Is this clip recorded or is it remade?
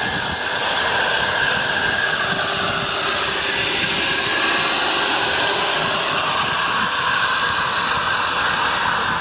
recorded